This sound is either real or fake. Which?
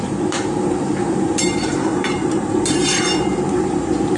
fake